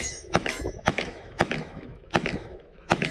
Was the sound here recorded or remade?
remade